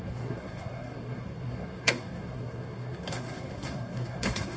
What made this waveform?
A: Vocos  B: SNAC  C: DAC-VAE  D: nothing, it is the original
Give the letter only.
B